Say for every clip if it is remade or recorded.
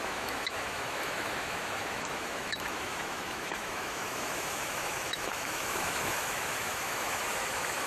remade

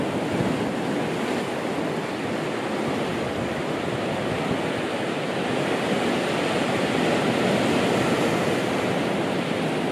recorded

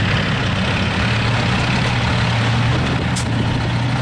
recorded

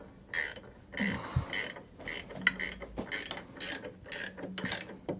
recorded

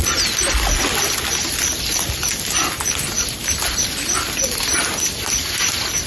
recorded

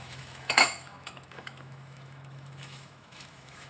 remade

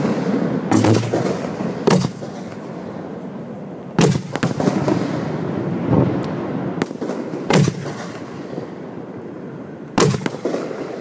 recorded